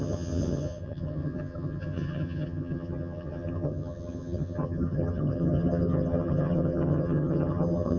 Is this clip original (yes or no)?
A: no